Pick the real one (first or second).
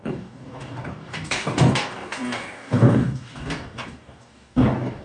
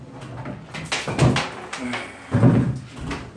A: second